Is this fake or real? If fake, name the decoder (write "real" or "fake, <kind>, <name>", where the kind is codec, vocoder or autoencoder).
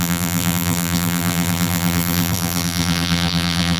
fake, vocoder, BigVGAN v2